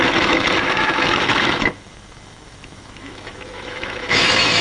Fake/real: fake